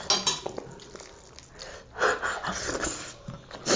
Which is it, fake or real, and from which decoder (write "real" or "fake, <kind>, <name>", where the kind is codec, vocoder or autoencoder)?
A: real